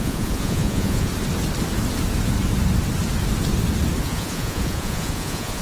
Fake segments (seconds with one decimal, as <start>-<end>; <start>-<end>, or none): 0.0-1.1; 4.0-5.6